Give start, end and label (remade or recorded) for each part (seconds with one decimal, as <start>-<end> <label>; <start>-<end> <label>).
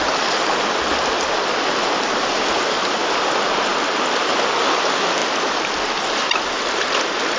0.0-7.4 recorded